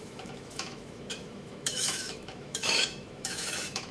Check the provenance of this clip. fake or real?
fake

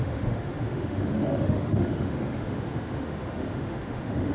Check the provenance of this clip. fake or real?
fake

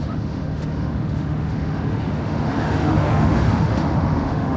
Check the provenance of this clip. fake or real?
fake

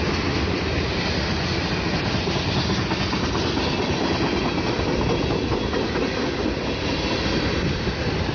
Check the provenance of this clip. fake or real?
real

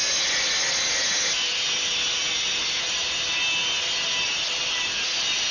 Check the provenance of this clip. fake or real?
real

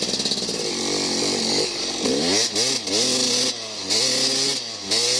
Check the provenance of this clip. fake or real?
real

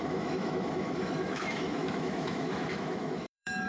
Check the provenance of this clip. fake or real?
fake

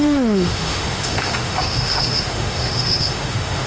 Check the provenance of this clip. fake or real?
fake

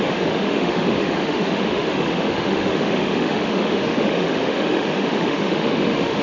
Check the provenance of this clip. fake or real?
fake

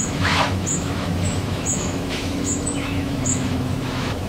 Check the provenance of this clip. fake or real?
fake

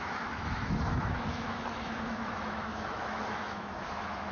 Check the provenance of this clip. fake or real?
fake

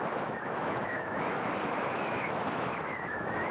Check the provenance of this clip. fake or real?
fake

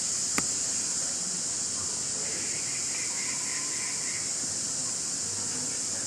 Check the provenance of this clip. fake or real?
real